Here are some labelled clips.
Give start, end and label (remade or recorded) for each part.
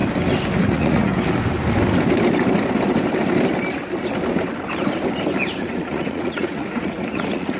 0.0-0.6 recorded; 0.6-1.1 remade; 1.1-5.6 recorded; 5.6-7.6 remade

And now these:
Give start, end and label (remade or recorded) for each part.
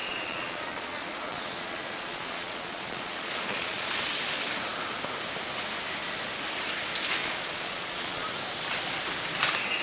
0.0-3.9 remade; 3.9-7.2 recorded; 7.2-8.3 remade; 8.3-9.8 recorded